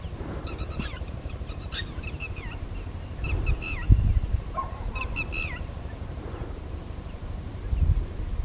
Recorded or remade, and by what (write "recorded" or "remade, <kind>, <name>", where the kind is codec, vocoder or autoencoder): remade, vocoder, BigVGAN v2